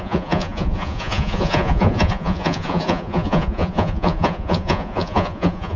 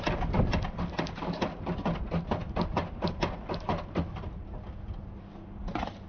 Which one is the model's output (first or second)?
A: first